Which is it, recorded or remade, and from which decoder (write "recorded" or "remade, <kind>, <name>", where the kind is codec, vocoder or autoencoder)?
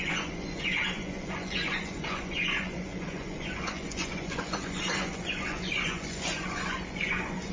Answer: remade, vocoder, Vocos